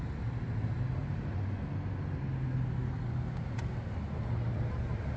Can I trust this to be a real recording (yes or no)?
yes